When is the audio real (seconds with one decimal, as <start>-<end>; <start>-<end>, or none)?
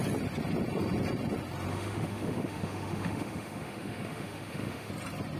0.0-1.7; 4.9-5.4